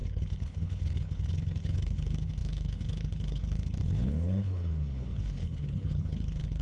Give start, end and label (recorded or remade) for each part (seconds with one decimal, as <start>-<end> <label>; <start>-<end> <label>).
0.0-6.6 remade